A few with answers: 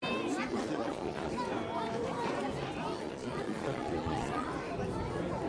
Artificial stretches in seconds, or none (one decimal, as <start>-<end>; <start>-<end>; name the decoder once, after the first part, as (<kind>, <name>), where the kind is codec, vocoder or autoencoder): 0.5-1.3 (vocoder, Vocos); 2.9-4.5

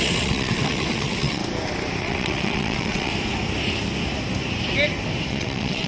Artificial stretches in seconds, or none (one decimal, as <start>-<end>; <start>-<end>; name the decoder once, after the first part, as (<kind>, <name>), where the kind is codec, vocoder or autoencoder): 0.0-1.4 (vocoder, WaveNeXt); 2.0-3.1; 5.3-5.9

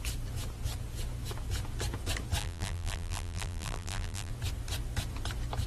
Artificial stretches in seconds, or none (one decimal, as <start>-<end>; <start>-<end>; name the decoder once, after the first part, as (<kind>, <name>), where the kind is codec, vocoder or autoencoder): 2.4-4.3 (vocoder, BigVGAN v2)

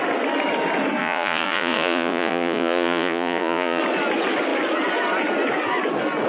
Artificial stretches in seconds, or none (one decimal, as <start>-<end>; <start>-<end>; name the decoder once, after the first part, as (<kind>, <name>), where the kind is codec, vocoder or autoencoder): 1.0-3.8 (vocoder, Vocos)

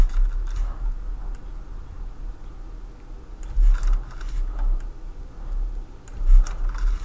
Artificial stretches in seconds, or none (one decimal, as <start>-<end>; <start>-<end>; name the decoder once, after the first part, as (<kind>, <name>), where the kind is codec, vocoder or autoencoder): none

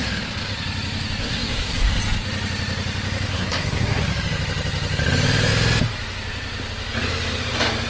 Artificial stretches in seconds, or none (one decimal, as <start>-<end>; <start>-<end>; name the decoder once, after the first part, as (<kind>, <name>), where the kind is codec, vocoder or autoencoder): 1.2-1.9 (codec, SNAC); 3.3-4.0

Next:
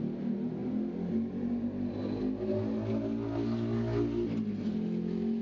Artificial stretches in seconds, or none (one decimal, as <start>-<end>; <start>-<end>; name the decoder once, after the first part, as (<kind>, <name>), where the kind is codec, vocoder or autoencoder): none